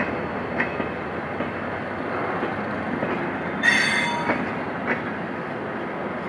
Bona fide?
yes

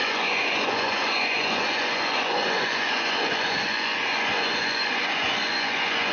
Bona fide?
no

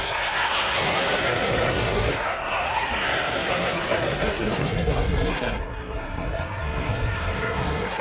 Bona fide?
no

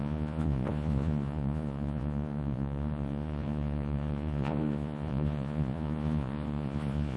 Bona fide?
no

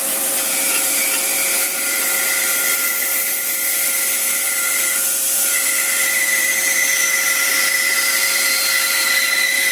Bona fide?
no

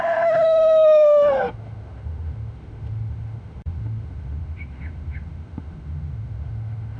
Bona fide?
no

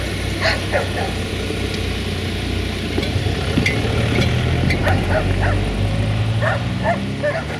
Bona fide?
yes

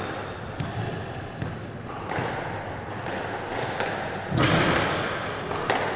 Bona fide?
yes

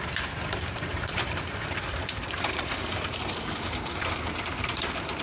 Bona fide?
no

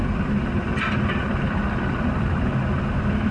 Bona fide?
no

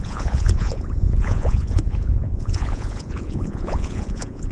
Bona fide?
no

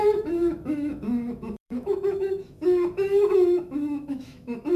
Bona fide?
no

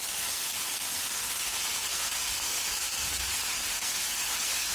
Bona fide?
no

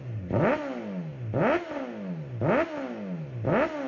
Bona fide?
yes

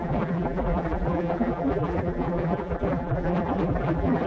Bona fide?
no